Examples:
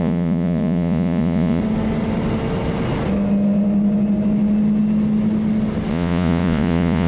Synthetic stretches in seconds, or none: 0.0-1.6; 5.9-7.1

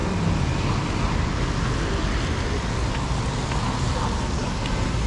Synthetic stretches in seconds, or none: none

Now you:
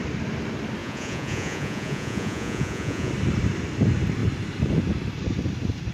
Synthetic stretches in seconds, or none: 0.8-3.1